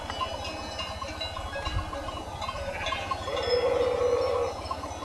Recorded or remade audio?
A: recorded